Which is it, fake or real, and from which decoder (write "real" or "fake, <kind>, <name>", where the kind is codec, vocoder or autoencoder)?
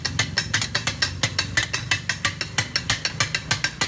real